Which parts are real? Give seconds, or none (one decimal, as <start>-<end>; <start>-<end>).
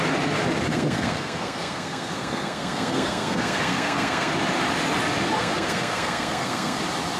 0.0-0.7; 4.3-5.4; 6.8-7.2